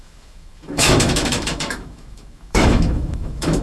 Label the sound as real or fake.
fake